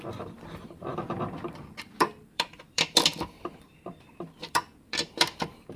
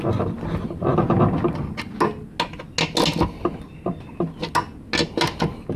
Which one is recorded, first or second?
second